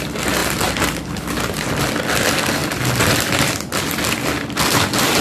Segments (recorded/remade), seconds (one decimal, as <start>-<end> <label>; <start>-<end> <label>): 0.0-5.2 recorded